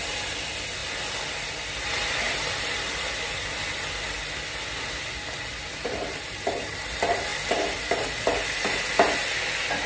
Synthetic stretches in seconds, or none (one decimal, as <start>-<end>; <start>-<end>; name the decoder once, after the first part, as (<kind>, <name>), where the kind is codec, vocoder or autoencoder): none